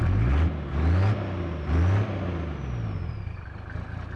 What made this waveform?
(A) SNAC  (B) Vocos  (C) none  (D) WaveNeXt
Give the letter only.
C